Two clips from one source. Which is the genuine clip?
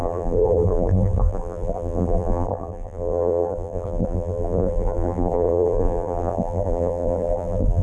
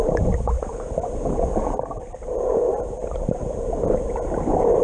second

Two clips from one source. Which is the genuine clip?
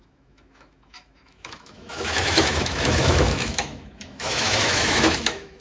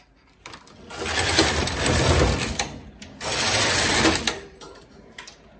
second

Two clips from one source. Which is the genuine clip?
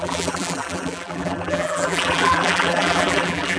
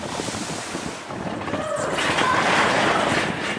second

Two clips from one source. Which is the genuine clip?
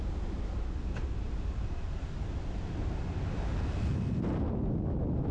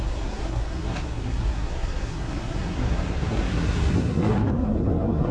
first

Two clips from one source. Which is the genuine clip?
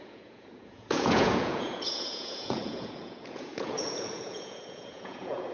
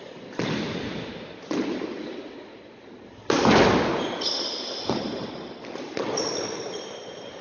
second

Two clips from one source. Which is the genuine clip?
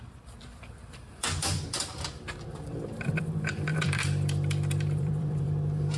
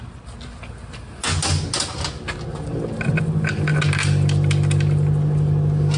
second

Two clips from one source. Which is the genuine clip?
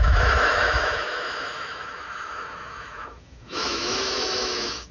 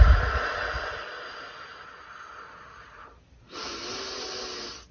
second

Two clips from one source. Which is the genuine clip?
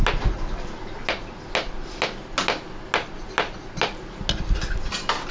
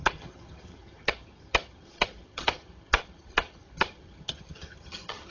first